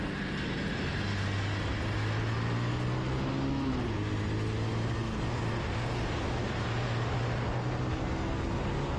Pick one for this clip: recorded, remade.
recorded